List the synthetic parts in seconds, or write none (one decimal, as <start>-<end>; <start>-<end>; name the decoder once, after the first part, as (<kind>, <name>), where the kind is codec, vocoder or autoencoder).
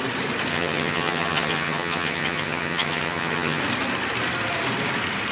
0.5-3.6 (vocoder, HiFi-GAN)